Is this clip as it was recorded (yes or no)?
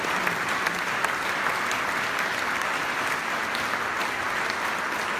yes